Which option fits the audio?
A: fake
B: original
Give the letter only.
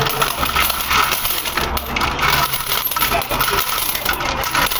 B